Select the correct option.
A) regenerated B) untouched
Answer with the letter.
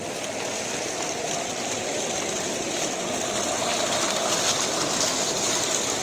B